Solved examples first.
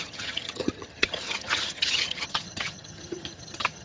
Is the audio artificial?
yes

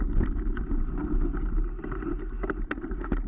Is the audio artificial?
no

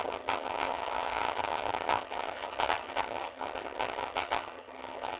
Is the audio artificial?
yes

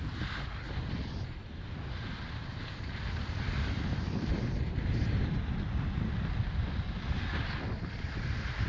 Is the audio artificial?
no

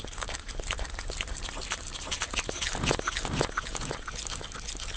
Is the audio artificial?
no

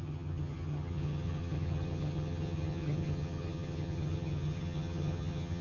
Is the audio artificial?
yes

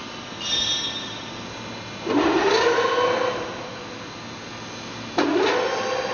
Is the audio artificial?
no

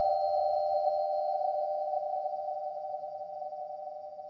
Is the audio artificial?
yes